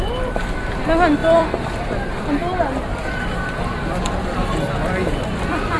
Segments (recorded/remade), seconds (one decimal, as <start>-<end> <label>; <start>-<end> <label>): 0.0-1.2 recorded; 1.2-1.8 remade; 1.8-2.9 recorded; 2.9-4.0 remade; 4.0-5.8 recorded